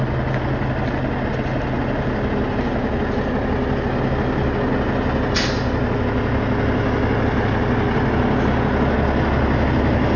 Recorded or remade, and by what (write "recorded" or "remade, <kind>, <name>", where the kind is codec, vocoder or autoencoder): recorded